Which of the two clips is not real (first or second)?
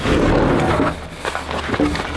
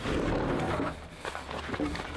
second